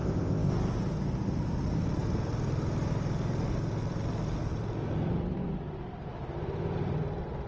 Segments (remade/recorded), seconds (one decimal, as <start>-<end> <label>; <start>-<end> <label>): 0.0-0.5 remade; 0.5-7.5 recorded